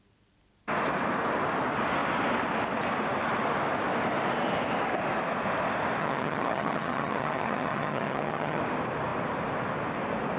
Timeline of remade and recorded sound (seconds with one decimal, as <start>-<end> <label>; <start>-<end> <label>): 0.0-6.0 recorded; 6.0-8.6 remade; 8.6-10.4 recorded